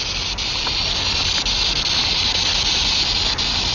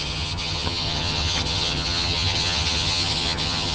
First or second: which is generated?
second